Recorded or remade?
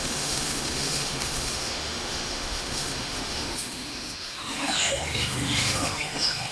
remade